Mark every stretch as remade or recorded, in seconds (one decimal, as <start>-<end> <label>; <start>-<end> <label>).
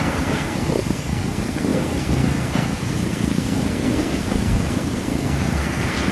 0.0-6.1 remade